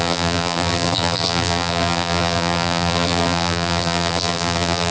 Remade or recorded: remade